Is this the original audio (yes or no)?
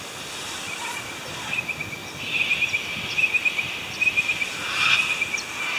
yes